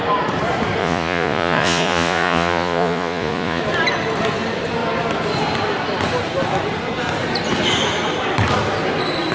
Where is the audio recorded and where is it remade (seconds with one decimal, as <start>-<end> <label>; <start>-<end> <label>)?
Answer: 0.0-0.8 recorded; 0.8-3.6 remade; 3.6-9.3 recorded